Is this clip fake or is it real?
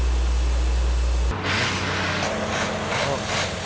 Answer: real